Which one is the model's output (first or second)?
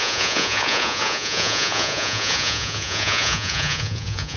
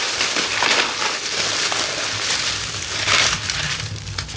first